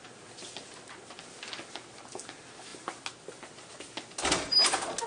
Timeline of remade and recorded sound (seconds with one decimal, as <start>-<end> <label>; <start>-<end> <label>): 0.0-5.1 recorded